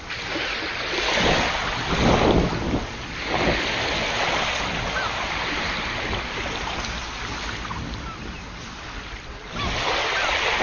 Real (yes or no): yes